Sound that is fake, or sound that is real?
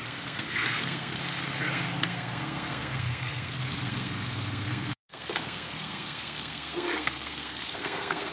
fake